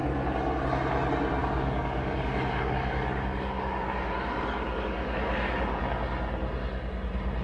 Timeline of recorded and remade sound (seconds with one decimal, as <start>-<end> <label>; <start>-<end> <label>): 0.0-1.4 recorded; 1.4-5.8 remade; 5.8-7.4 recorded